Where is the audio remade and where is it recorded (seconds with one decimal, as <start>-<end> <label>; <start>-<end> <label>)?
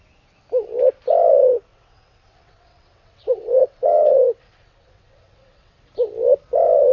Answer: 0.0-1.7 recorded; 1.7-5.8 remade; 5.8-6.9 recorded